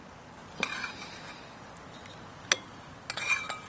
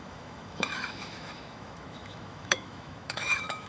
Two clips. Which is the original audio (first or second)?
first